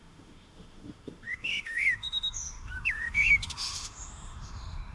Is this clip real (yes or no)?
no